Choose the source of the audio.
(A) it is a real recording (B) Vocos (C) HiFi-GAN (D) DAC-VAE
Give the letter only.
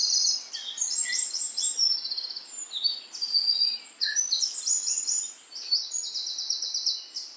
A